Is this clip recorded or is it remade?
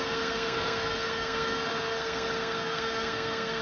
remade